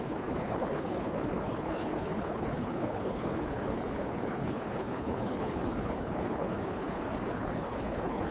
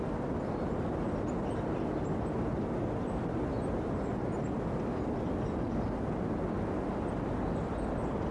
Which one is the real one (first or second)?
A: second